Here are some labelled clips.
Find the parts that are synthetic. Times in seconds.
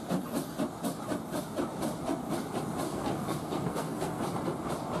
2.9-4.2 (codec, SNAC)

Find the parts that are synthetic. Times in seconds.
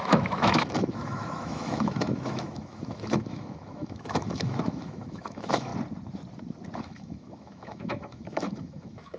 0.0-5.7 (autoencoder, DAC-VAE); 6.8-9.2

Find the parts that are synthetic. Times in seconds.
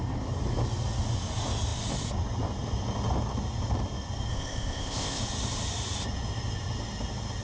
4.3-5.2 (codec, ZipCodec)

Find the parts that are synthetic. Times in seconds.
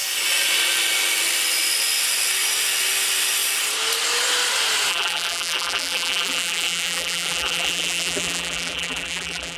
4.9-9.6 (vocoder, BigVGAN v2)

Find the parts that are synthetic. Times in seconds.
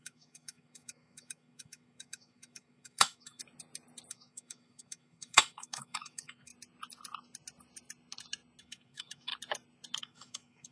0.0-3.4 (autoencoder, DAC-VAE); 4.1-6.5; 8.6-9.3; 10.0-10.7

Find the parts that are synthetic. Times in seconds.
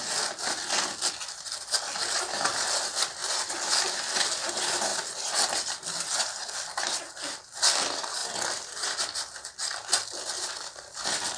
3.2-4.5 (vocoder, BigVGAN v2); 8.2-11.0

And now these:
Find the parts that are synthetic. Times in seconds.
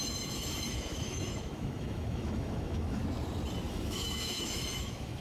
0.0-3.0 (autoencoder, DAC-VAE); 3.7-5.2